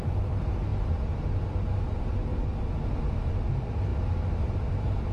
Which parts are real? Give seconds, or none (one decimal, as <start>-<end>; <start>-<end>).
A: 0.0-5.1